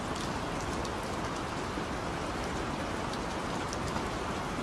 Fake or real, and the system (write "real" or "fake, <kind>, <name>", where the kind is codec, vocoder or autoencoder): real